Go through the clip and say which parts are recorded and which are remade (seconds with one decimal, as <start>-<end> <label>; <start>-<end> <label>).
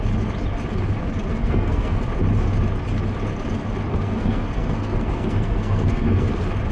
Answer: 0.0-1.3 recorded; 1.3-2.0 remade; 2.0-3.9 recorded; 3.9-6.3 remade; 6.3-6.7 recorded